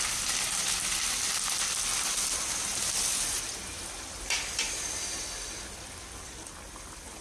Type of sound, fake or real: real